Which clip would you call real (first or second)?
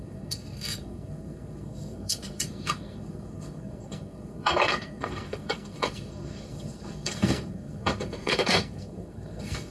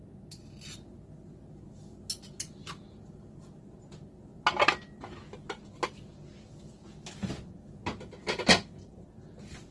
second